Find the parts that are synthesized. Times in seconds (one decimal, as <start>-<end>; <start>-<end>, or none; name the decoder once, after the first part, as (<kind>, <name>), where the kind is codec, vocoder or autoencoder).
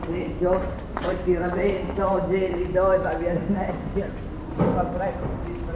none